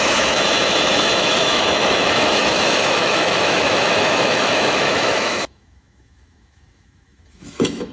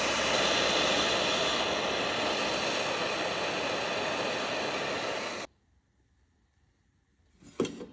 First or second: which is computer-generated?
first